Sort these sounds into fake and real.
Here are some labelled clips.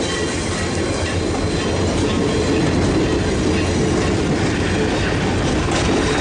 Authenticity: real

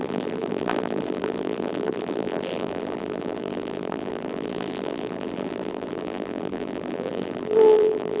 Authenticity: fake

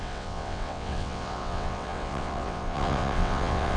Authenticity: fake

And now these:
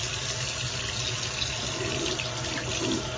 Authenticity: real